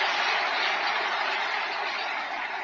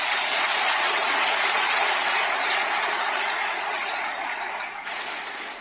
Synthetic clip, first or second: second